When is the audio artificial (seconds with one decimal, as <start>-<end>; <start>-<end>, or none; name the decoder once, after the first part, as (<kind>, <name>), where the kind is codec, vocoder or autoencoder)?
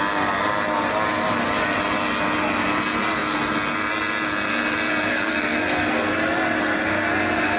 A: 5.1-6.1 (codec, SNAC)